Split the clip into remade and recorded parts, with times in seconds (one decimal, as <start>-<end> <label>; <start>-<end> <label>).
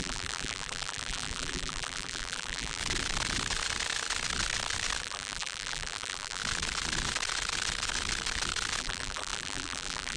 0.0-2.8 remade; 2.8-5.0 recorded; 5.0-6.4 remade; 6.4-8.8 recorded; 8.8-10.2 remade